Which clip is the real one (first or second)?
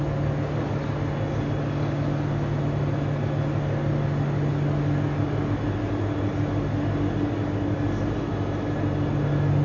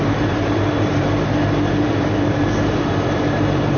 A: first